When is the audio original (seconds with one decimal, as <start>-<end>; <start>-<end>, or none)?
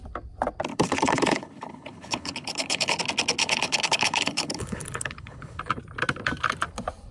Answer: 0.0-0.7; 3.0-3.4; 5.6-7.1